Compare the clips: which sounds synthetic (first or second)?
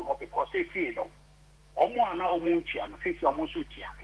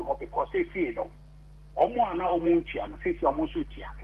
first